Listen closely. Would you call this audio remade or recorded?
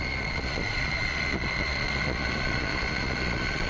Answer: remade